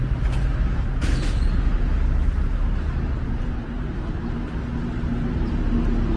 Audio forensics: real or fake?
real